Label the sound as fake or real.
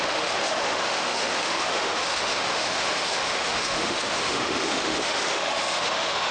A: fake